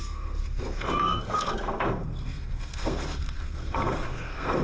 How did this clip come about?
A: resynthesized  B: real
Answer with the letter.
A